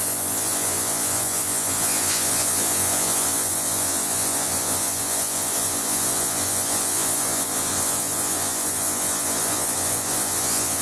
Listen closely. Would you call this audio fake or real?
fake